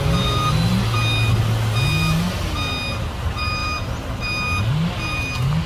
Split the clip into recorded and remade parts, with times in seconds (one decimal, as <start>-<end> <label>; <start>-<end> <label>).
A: 0.0-5.7 recorded